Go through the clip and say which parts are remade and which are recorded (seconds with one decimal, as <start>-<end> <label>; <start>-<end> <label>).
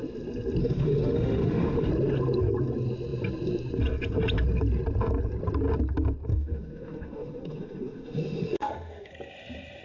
0.0-0.6 recorded; 0.6-1.9 remade; 1.9-6.3 recorded; 6.3-9.1 remade; 9.1-9.8 recorded